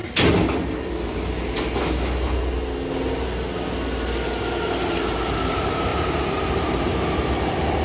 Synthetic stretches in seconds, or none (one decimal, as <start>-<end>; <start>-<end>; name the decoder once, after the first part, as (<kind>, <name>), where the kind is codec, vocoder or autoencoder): 4.7-7.8 (vocoder, BigVGAN v2)